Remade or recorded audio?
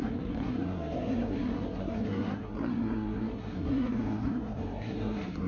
remade